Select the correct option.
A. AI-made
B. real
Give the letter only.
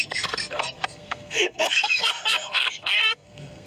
A